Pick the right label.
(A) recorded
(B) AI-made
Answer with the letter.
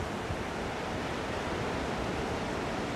A